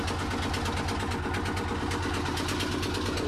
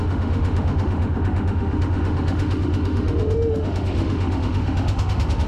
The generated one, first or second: second